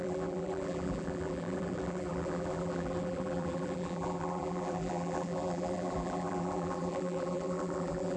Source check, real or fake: fake